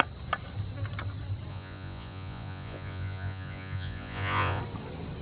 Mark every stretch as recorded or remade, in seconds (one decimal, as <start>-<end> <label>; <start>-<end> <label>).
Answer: 0.0-1.5 recorded; 1.5-4.6 remade; 4.6-5.2 recorded